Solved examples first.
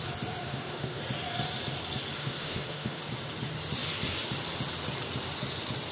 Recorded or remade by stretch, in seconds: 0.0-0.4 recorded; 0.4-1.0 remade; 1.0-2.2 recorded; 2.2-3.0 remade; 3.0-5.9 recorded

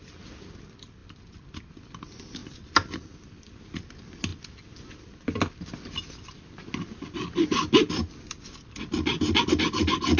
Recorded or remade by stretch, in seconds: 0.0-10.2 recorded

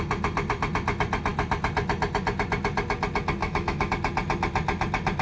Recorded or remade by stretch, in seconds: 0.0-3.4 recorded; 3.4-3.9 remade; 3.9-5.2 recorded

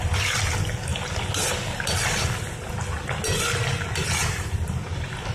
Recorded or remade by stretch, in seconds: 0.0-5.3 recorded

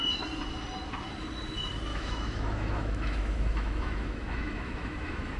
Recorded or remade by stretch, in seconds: 0.0-1.9 recorded; 1.9-5.4 remade